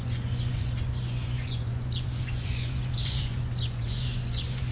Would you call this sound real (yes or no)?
no